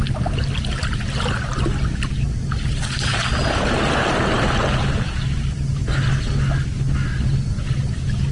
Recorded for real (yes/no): yes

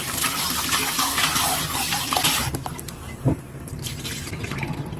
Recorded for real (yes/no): yes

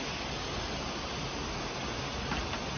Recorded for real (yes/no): yes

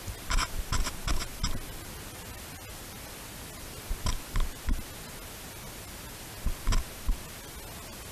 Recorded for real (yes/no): yes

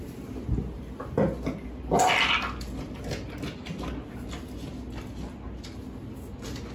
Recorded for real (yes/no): yes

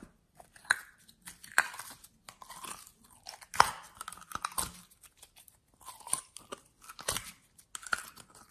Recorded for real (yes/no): yes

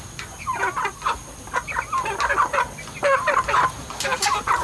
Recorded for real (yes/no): yes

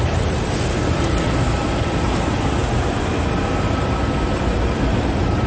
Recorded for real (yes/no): no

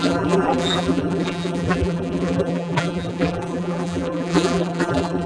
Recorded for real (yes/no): no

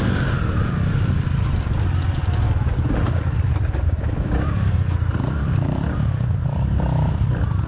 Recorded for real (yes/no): no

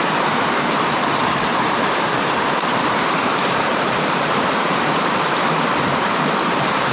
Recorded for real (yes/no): no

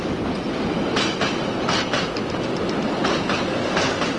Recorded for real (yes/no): yes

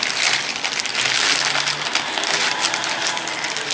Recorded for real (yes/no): yes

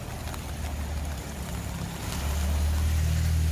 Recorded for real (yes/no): yes